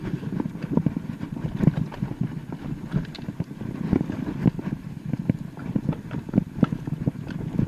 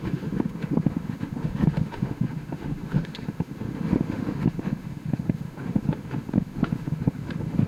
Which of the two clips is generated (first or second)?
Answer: second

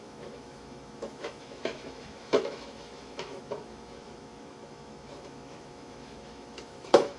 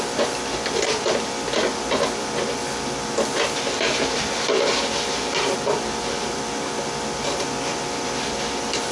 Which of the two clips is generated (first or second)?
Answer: first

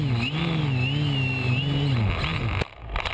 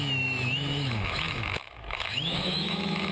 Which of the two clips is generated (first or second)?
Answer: second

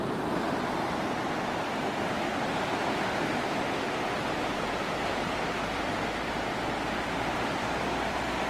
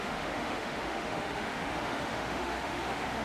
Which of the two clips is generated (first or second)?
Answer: second